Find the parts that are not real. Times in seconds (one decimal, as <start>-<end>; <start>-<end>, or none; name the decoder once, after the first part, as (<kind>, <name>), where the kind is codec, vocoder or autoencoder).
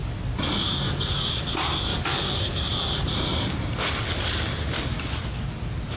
0.0-0.7 (vocoder, BigVGAN v2); 1.9-3.9